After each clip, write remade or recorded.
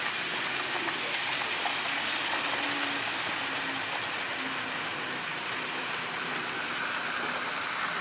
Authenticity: recorded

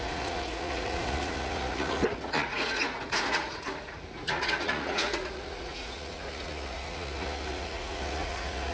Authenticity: remade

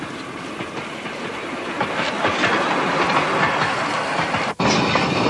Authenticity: recorded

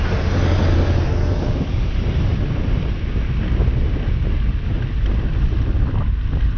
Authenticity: recorded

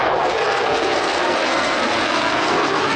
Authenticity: remade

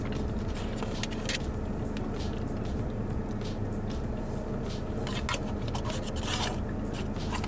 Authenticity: recorded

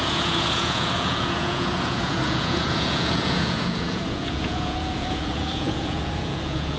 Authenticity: remade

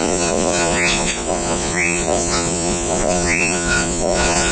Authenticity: remade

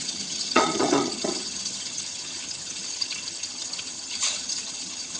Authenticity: remade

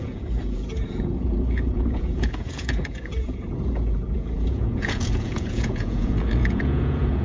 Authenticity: remade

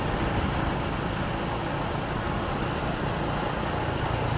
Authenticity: recorded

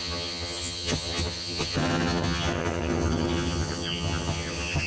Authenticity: remade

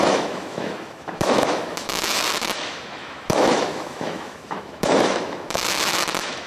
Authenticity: remade